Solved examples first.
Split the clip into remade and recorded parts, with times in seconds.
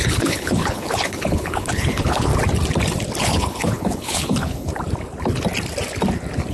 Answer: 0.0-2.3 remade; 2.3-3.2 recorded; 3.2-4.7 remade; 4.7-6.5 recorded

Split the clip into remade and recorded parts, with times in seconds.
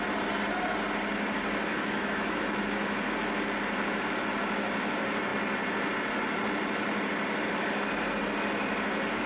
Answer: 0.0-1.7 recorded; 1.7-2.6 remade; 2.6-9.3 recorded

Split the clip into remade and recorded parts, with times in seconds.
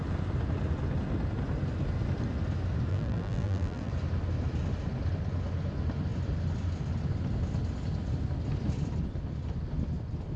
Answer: 0.0-2.9 recorded; 2.9-3.9 remade; 3.9-10.4 recorded